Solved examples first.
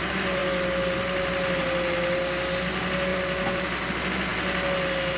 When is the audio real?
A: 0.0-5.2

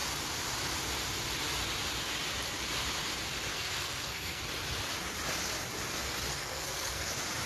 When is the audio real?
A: 0.0-3.5; 4.4-6.3; 7.1-7.5

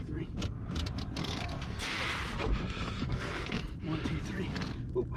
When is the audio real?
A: 0.0-1.2; 2.0-3.0; 3.6-5.2

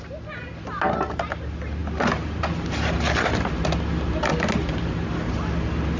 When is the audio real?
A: 0.0-6.0

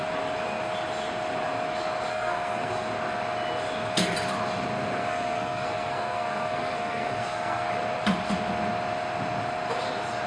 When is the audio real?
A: 0.0-2.1; 2.7-5.0; 7.7-10.3